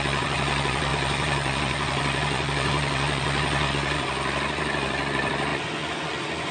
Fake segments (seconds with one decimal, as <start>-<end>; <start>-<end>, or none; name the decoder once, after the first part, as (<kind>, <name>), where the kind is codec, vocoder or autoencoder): 0.0-6.5 (vocoder, Vocos)